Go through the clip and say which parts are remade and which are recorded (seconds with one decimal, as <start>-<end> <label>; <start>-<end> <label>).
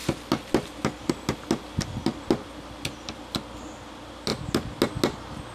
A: 0.0-5.5 recorded